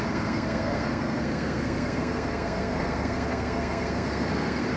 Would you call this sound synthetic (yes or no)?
yes